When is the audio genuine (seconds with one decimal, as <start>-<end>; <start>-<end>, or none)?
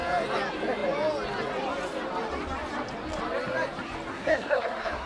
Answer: 0.0-4.1